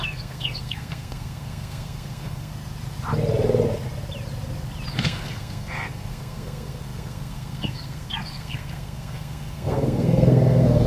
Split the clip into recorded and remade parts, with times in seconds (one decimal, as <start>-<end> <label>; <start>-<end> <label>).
0.0-2.5 remade; 2.5-4.9 recorded; 4.9-10.9 remade